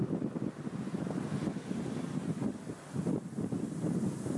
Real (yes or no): yes